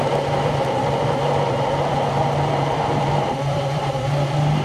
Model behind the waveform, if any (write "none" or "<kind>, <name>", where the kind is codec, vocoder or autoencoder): vocoder, BigVGAN v2